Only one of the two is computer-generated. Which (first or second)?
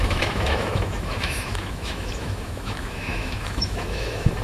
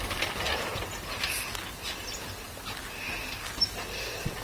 first